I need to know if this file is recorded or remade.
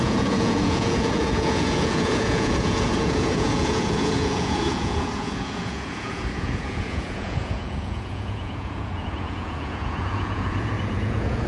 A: remade